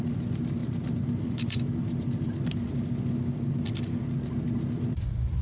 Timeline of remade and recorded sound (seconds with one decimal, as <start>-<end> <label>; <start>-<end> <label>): 0.0-0.6 recorded; 0.6-2.7 remade; 2.7-5.4 recorded